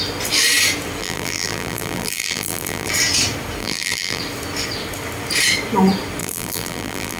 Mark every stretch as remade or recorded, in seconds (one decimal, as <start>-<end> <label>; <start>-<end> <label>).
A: 0.0-1.0 recorded; 1.0-2.9 remade; 2.9-3.6 recorded; 3.6-4.2 remade; 4.2-6.2 recorded; 6.2-7.2 remade